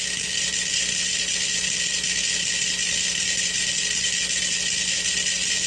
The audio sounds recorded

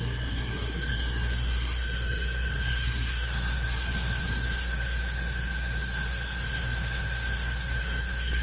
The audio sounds remade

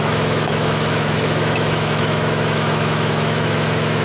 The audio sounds remade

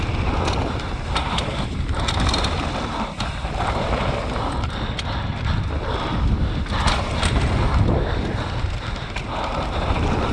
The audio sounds recorded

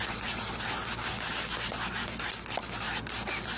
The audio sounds recorded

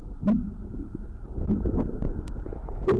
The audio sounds recorded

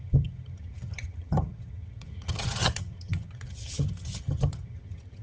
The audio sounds remade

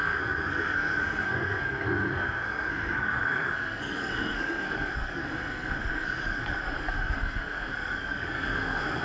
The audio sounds remade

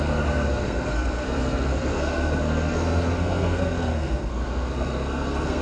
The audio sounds remade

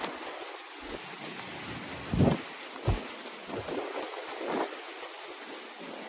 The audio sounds recorded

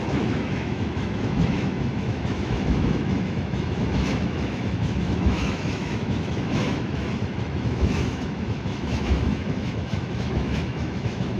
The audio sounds remade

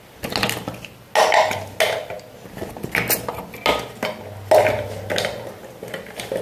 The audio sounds recorded